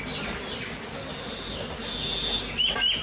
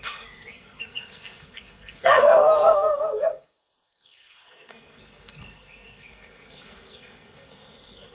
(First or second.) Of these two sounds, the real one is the first